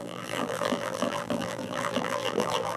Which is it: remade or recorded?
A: remade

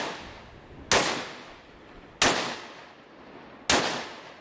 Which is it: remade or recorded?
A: recorded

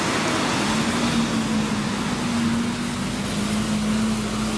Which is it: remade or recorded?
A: recorded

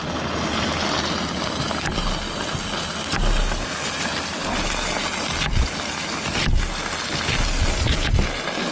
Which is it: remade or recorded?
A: recorded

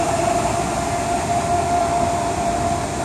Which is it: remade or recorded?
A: recorded